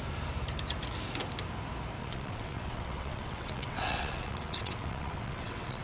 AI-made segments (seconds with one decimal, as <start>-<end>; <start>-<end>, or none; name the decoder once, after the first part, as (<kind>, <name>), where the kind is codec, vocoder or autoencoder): 2.0-5.8 (vocoder, WaveNeXt)